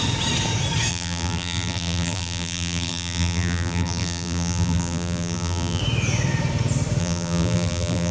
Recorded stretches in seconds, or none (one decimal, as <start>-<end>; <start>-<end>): 0.0-0.9; 5.8-7.0